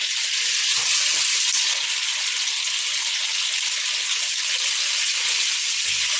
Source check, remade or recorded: recorded